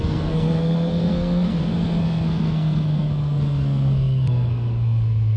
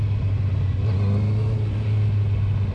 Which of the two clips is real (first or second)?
second